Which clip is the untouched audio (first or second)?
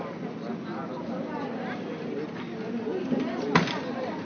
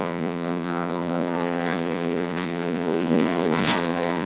first